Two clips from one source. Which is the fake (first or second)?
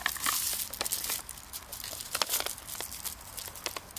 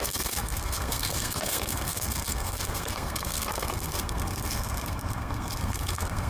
second